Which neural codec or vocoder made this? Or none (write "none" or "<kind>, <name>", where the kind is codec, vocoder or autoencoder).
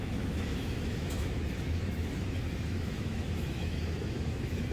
autoencoder, DAC-VAE